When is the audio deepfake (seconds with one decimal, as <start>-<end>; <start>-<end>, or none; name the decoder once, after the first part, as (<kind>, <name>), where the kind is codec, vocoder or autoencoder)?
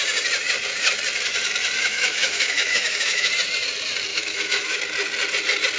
1.8-3.3 (autoencoder, DAC-VAE); 4.1-4.8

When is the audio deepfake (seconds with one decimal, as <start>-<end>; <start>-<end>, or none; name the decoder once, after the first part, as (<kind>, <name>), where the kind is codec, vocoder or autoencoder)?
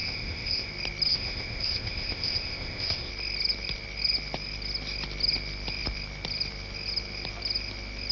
0.0-0.7 (codec, ZipCodec); 1.1-3.1